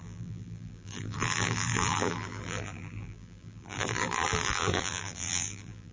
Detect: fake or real fake